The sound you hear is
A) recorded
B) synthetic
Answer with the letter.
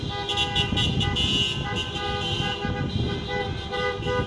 A